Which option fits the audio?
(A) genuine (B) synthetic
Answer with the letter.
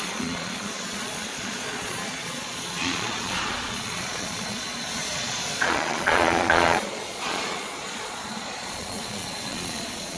B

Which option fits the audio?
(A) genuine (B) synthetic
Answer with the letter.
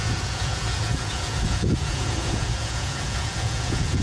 B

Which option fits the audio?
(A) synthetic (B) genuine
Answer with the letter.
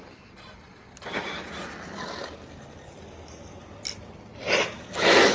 B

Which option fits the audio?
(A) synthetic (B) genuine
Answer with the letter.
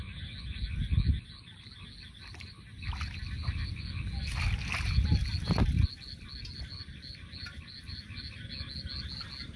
B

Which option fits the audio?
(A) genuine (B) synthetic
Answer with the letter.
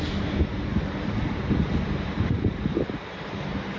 B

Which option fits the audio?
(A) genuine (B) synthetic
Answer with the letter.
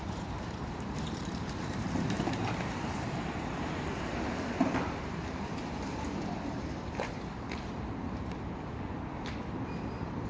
B